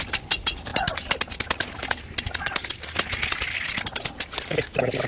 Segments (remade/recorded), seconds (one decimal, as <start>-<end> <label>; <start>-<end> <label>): 0.0-5.1 recorded